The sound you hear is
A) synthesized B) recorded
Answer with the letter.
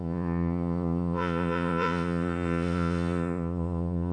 A